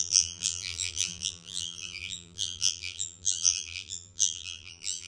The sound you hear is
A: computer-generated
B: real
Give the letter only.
A